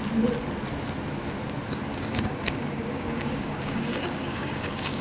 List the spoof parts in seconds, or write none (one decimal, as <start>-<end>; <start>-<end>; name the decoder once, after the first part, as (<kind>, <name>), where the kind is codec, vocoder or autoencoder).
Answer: 1.9-5.0 (codec, DAC)